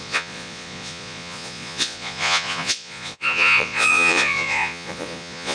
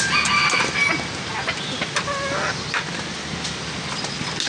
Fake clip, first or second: first